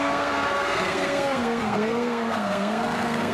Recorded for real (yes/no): no